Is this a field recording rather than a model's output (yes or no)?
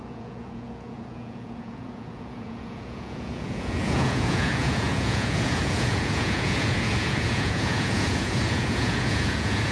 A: no